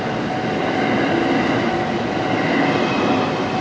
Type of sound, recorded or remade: recorded